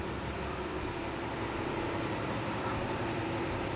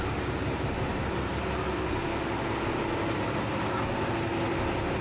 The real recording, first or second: second